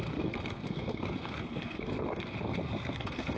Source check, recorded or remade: remade